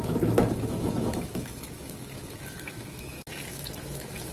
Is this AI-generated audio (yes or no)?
yes